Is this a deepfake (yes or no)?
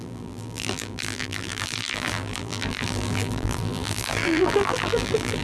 yes